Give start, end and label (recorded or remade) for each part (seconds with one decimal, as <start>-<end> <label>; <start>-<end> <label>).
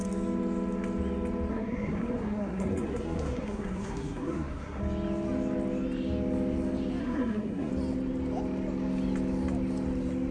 0.0-1.5 recorded; 1.5-4.8 remade; 4.8-7.0 recorded; 7.0-7.7 remade; 7.7-10.3 recorded